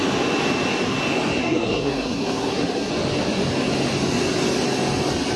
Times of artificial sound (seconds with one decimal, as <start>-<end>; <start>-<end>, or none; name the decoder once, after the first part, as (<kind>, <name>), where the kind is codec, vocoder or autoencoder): 1.4-2.9 (codec, SNAC)